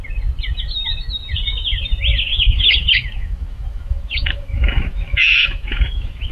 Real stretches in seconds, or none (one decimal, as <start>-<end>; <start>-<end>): 0.0-2.3